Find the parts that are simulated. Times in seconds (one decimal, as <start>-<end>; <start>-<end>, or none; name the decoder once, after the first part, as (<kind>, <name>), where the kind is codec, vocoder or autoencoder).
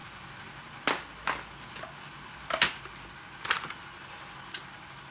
none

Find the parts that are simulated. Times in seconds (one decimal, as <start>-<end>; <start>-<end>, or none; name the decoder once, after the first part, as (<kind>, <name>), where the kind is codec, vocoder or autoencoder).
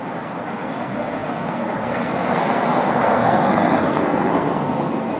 0.0-5.2 (codec, SNAC)